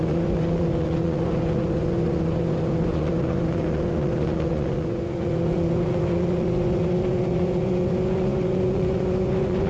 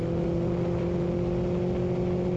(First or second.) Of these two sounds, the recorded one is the second